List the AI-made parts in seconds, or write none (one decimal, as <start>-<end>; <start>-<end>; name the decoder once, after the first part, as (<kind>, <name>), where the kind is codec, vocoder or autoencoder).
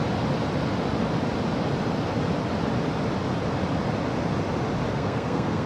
4.9-5.7 (codec, SNAC)